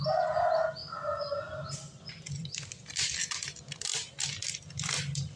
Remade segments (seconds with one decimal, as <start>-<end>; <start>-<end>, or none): none